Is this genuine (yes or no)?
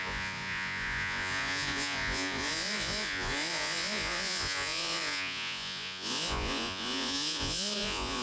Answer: no